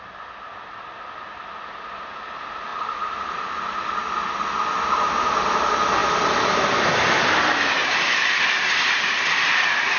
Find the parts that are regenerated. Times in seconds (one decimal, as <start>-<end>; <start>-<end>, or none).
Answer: none